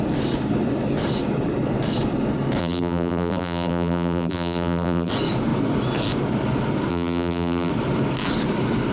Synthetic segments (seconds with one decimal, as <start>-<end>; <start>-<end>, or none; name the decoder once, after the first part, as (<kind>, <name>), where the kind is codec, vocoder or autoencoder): 2.6-5.1 (vocoder, BigVGAN v2); 6.9-7.7